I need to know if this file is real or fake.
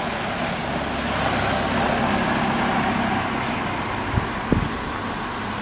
real